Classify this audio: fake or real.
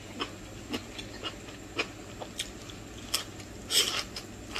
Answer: real